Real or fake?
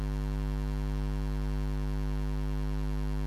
real